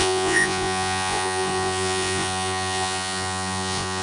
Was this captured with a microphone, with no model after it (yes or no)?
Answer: no